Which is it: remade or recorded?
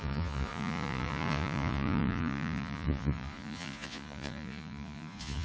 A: remade